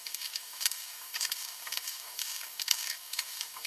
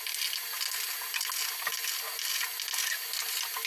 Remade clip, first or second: first